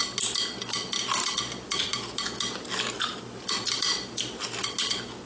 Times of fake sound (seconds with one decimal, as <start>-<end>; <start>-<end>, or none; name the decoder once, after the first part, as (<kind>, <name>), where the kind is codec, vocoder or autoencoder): none